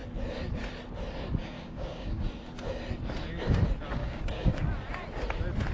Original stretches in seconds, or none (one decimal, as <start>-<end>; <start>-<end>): 0.0-1.4; 2.2-4.0; 4.6-5.7